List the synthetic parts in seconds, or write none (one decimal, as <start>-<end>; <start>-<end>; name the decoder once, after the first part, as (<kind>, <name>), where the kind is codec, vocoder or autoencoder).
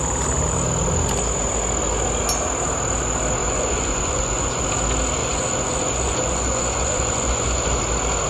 3.4-4.6 (vocoder, Vocos); 5.2-7.8